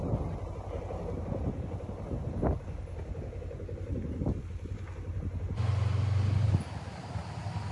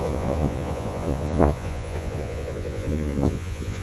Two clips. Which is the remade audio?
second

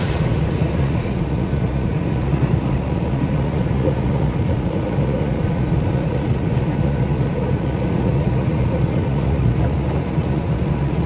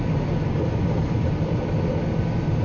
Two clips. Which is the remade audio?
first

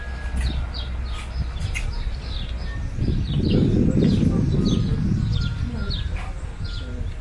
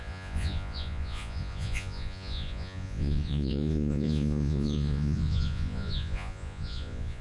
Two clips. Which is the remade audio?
second